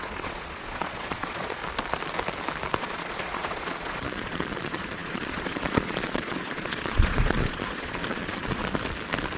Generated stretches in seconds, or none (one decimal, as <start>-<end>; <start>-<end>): 0.0-1.6; 2.8-8.6